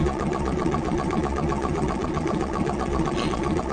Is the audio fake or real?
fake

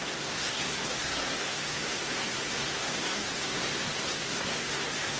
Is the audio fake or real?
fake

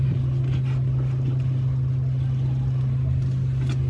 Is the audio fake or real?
real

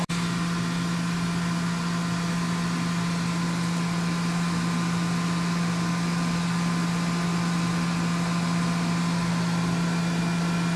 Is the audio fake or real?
real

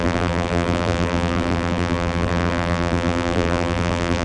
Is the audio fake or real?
fake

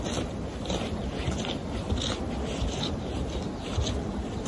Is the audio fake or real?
real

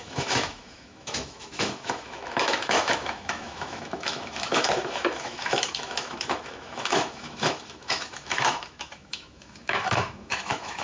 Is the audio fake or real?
fake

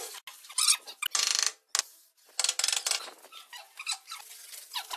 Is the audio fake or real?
real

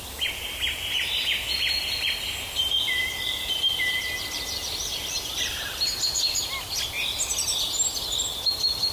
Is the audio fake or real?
real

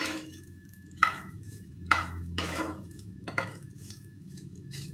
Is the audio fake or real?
fake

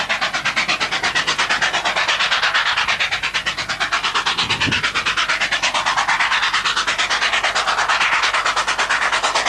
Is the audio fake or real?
real